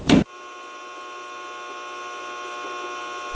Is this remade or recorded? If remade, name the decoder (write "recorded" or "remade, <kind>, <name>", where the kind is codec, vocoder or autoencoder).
recorded